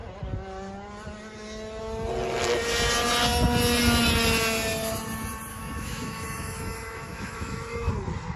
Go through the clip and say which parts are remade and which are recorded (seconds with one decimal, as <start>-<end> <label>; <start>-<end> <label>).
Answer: 0.0-5.5 recorded; 5.5-7.9 remade; 7.9-8.4 recorded